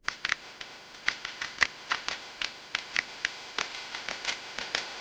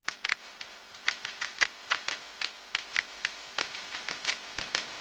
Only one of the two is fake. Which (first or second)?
first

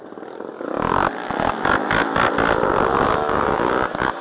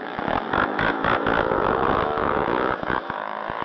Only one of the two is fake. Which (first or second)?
second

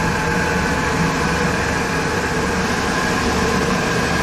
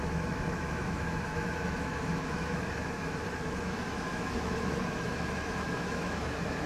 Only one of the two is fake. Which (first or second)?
second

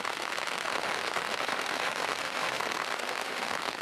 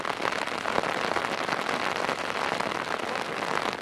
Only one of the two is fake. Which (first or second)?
first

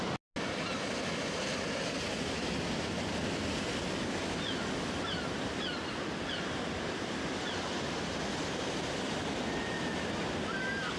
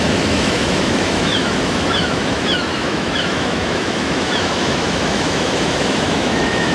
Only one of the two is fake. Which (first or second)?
second